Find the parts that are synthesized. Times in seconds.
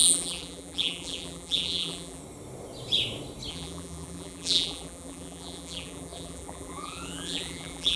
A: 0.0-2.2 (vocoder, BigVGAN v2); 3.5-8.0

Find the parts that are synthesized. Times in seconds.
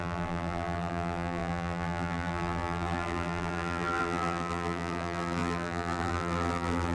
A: 0.0-6.9 (vocoder, BigVGAN v2)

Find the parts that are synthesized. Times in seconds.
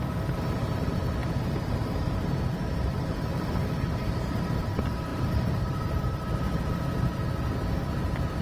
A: 0.0-7.1 (vocoder, BigVGAN v2); 7.9-8.4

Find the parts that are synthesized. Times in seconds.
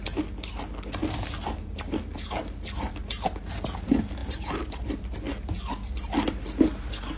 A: none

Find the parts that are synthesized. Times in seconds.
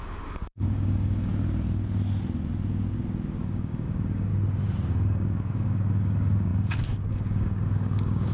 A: 0.0-1.3 (codec, DAC); 3.4-4.3; 4.9-8.3